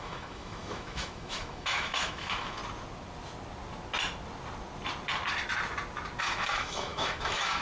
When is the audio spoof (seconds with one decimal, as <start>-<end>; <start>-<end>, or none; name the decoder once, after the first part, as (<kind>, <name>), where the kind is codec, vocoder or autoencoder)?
0.0-2.6 (autoencoder, DAC-VAE); 6.2-7.6